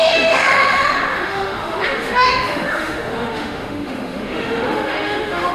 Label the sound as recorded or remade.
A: remade